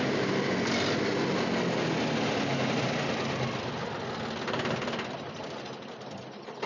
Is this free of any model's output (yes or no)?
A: yes